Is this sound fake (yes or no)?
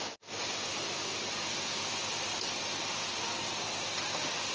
no